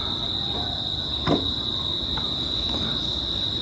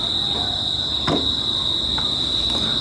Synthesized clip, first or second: first